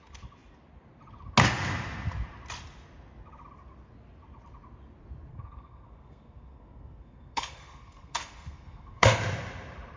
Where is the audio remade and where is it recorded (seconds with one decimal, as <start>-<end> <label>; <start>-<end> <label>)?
0.0-5.3 recorded; 5.3-9.2 remade; 9.2-10.0 recorded